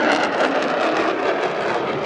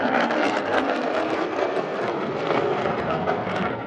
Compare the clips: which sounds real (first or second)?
first